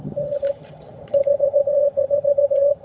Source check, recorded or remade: remade